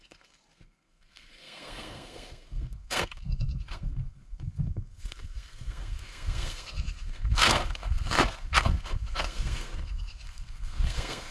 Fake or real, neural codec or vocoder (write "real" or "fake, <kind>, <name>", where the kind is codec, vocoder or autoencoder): fake, codec, SNAC